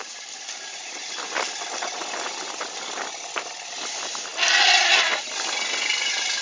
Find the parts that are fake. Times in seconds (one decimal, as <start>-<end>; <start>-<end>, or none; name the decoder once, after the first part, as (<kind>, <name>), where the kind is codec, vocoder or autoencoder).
0.0-0.6 (vocoder, BigVGAN v2); 1.0-3.5; 4.3-5.2